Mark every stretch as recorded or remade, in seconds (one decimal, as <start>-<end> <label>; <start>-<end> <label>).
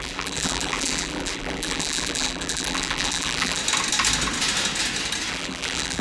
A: 0.0-3.6 remade; 3.6-5.3 recorded; 5.3-6.0 remade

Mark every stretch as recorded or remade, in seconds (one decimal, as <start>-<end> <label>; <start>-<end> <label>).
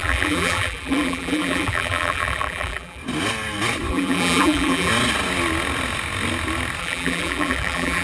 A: 0.0-3.0 remade; 3.0-3.9 recorded; 3.9-4.9 remade; 4.9-6.8 recorded; 6.8-8.0 remade